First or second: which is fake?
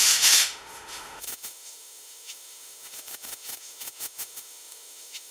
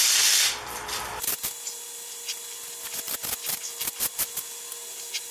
first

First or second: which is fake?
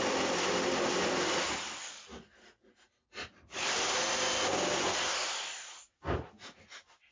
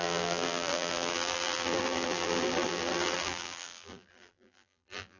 second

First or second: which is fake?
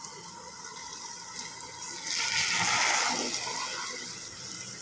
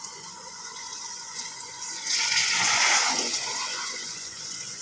second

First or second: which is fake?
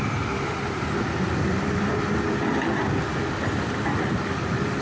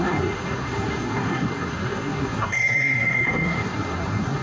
second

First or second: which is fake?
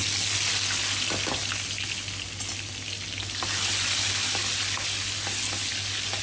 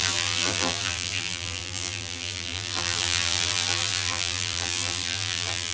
second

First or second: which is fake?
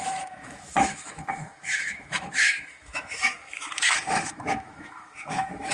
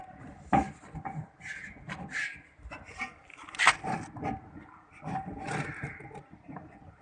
first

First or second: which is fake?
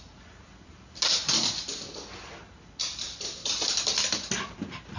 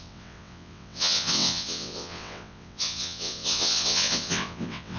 second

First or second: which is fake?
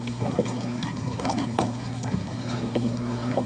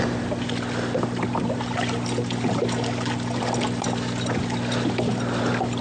first